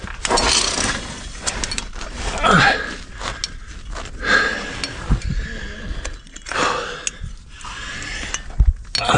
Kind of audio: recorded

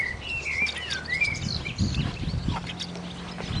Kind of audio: recorded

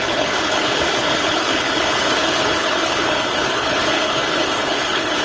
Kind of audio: remade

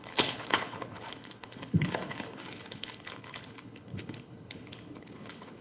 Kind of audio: remade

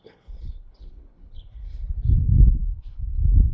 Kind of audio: remade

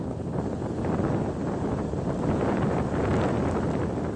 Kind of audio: recorded